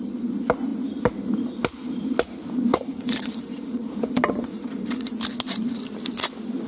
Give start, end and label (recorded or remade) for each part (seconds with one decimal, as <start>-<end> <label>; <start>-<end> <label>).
0.0-2.7 recorded; 2.7-4.0 remade; 4.0-4.4 recorded; 4.4-5.1 remade; 5.1-6.7 recorded